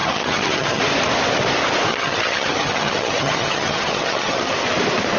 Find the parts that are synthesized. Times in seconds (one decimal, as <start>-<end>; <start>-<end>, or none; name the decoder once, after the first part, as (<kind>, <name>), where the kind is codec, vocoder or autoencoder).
0.0-0.8 (vocoder, HiFi-GAN); 1.9-4.5